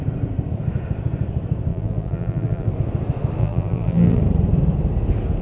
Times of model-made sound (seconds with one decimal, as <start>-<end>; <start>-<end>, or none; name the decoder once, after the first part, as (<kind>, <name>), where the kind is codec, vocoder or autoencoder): 1.7-2.7 (vocoder, BigVGAN v2); 3.4-4.2